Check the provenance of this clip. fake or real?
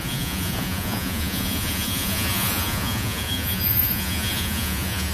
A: fake